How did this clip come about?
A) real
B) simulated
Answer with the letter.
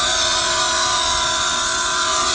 B